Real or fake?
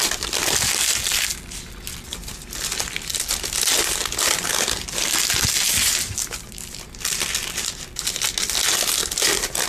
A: real